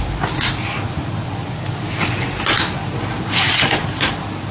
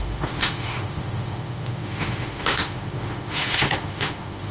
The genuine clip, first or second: first